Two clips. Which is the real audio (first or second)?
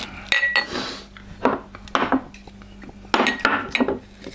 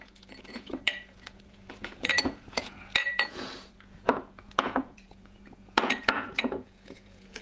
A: first